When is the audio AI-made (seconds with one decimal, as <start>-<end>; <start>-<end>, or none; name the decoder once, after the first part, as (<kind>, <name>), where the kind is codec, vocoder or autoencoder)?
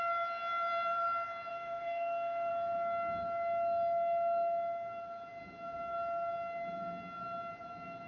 1.5-2.5 (autoencoder, DAC-VAE)